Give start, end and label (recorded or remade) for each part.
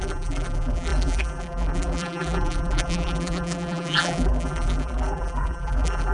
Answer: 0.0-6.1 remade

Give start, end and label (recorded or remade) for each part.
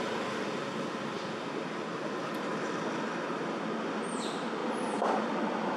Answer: 0.0-5.8 recorded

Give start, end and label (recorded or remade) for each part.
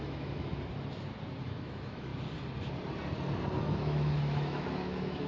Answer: 0.0-0.5 remade; 0.5-1.4 recorded; 1.4-2.1 remade; 2.1-3.6 recorded; 3.6-5.3 remade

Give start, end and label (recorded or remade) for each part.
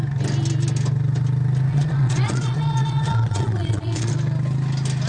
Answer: 0.0-1.7 recorded; 1.7-4.1 remade; 4.1-5.1 recorded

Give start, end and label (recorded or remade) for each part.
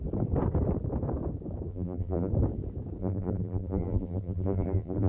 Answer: 0.0-1.7 recorded; 1.7-2.3 remade; 2.3-3.0 recorded; 3.0-5.1 remade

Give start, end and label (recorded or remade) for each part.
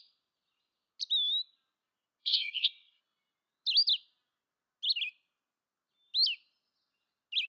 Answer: 0.0-2.2 recorded; 2.2-3.0 remade; 3.0-7.5 recorded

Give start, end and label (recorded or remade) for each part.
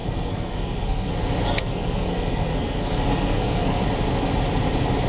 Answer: 0.0-1.1 remade; 1.1-1.5 recorded; 1.5-3.8 remade; 3.8-5.1 recorded